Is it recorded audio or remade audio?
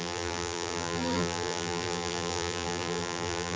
remade